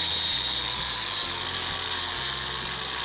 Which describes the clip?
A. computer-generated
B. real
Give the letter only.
B